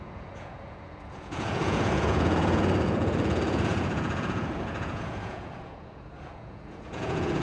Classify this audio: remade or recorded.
remade